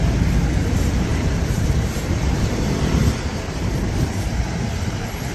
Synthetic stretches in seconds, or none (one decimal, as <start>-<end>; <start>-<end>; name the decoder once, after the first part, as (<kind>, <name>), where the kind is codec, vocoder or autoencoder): 0.0-5.3 (vocoder, BigVGAN v2)